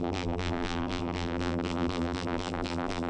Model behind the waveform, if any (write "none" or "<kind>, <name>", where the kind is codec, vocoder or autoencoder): vocoder, BigVGAN v2